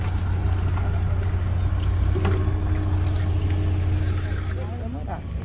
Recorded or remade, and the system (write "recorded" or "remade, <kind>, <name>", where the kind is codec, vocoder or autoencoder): recorded